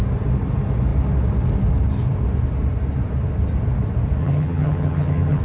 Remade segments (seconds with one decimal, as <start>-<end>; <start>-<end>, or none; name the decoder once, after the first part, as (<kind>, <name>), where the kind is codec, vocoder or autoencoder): 4.2-5.4 (vocoder, HiFi-GAN)